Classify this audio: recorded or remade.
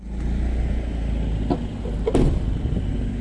recorded